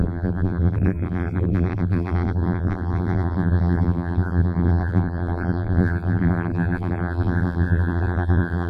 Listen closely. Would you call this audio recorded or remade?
remade